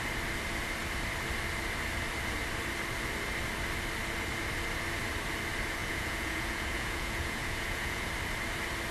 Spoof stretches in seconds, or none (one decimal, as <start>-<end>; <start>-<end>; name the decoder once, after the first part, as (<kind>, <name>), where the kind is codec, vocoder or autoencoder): 5.8-8.1 (vocoder, Vocos)